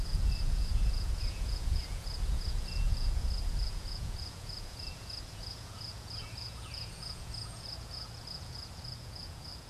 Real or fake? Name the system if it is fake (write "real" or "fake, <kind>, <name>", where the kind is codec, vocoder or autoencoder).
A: fake, vocoder, Vocos